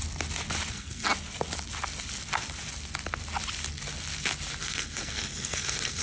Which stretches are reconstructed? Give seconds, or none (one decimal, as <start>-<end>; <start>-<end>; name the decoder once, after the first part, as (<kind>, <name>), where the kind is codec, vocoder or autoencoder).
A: 0.7-1.1 (codec, SNAC); 4.6-6.0